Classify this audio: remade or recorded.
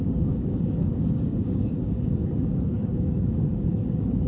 remade